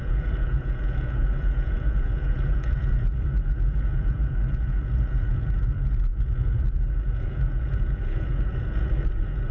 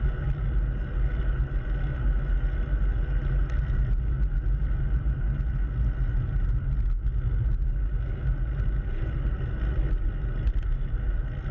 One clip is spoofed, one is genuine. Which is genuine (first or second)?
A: second